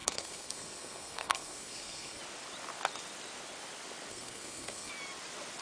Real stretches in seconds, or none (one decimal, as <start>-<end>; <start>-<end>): 2.2-4.1; 4.9-5.6